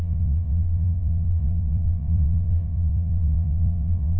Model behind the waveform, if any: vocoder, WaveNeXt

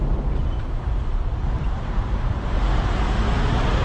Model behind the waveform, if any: vocoder, BigVGAN v2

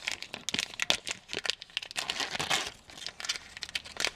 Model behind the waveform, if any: none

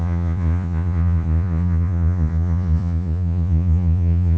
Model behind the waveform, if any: vocoder, Vocos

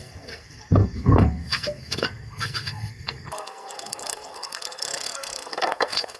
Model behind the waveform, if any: codec, SNAC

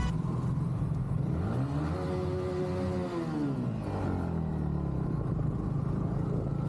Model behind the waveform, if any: none